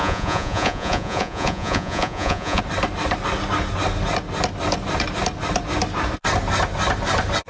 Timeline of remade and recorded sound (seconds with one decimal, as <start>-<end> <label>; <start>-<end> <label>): 0.0-2.6 remade; 2.6-7.5 recorded